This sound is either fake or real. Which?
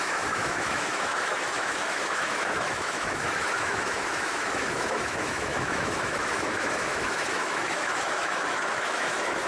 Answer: fake